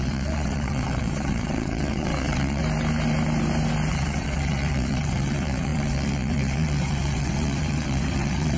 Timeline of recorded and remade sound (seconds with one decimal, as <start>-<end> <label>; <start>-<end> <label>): 0.0-2.6 remade; 2.6-3.9 recorded; 3.9-8.6 remade